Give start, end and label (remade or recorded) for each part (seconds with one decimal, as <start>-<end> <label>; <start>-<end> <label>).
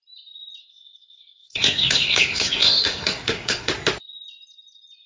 0.0-0.6 recorded; 0.6-3.7 remade; 3.7-5.1 recorded